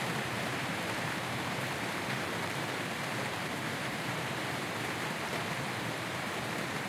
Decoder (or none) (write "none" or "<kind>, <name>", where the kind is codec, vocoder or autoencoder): vocoder, BigVGAN v2